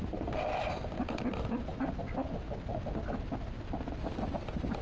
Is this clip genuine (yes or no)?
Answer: yes